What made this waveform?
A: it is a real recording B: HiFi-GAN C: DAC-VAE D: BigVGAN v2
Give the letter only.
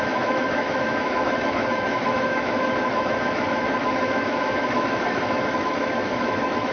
C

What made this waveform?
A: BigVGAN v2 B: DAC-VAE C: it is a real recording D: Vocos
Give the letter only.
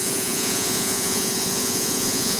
D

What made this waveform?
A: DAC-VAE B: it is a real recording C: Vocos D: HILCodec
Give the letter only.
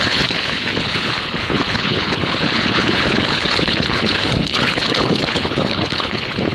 D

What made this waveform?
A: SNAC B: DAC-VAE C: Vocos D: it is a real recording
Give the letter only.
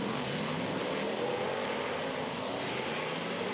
D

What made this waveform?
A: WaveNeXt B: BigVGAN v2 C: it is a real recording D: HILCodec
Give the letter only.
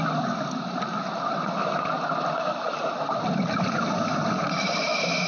C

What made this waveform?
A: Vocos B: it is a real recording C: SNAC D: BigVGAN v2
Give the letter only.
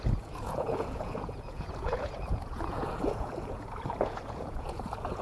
A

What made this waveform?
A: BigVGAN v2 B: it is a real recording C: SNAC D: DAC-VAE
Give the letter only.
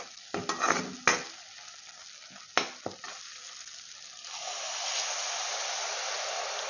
B